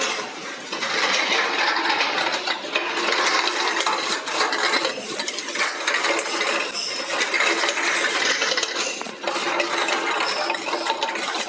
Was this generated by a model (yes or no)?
no